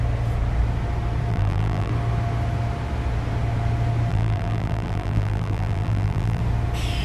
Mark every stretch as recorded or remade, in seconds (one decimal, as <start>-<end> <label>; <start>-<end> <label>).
0.0-1.3 recorded; 1.3-1.9 remade; 1.9-4.1 recorded; 4.1-6.4 remade; 6.4-7.0 recorded